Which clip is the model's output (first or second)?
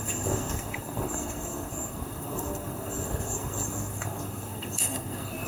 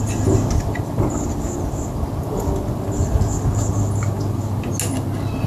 first